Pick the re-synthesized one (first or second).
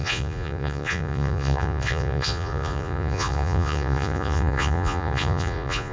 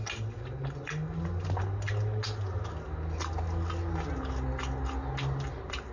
first